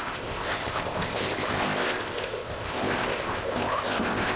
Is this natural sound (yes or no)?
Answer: no